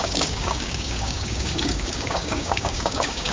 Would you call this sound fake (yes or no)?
yes